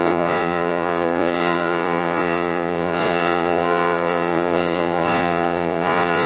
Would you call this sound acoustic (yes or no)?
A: no